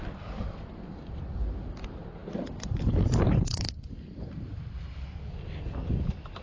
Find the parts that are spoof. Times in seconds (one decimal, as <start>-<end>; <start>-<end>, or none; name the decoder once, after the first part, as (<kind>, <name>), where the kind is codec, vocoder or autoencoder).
2.2-4.1 (vocoder, BigVGAN v2)